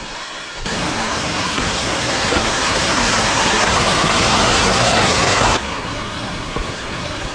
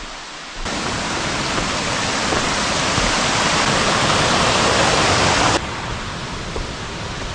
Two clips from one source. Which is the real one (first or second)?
second